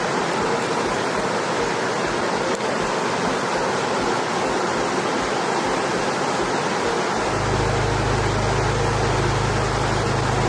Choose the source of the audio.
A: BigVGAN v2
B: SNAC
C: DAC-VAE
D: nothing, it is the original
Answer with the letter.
D